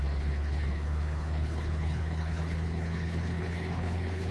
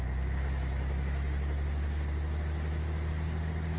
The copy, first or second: first